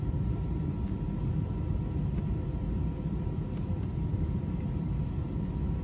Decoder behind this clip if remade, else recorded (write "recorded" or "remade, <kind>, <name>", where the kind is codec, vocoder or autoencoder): remade, vocoder, BigVGAN v2